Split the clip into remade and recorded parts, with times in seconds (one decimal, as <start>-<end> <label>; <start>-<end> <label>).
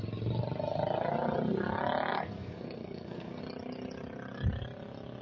0.0-2.1 recorded; 2.1-3.4 remade; 3.4-5.2 recorded